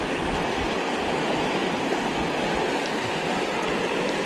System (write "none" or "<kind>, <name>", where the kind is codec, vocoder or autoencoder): none